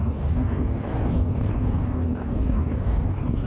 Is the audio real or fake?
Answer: fake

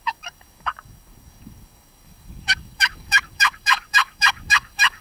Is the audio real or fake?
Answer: fake